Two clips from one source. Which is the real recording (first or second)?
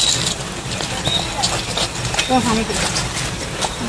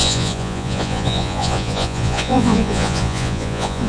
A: first